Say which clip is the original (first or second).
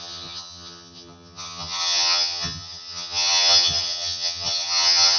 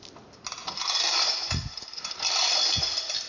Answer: second